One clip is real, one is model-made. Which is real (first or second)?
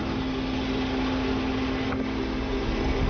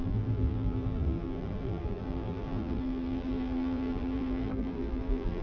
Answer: first